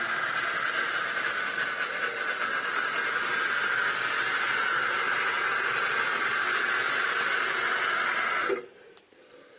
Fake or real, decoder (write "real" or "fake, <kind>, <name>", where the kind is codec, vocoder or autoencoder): real